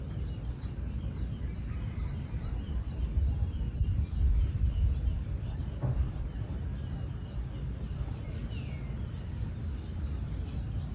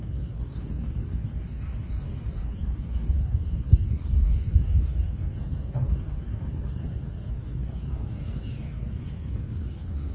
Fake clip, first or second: second